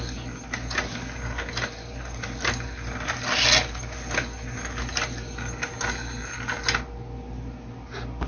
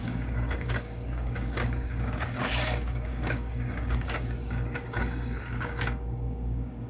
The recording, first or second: first